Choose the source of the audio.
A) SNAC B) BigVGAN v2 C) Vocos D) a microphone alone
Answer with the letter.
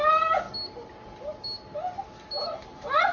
D